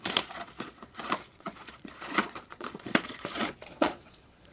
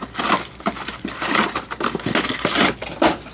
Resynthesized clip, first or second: first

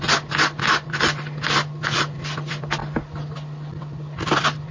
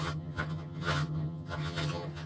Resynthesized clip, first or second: second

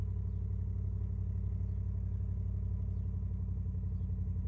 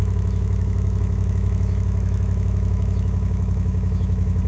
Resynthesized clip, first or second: second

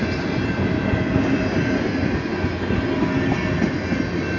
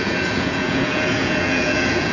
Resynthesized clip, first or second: second